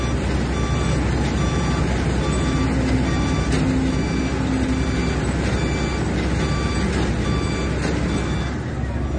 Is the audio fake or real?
real